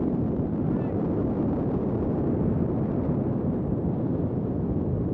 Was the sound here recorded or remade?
recorded